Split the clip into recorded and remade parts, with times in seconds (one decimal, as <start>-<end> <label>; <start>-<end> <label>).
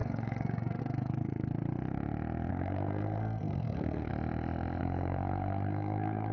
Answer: 0.0-1.5 remade; 1.5-2.5 recorded; 2.5-4.1 remade; 4.1-4.8 recorded; 4.8-6.3 remade